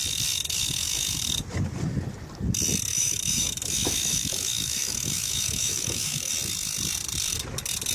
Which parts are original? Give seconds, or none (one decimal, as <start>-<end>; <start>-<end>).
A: 0.0-2.9; 6.3-7.9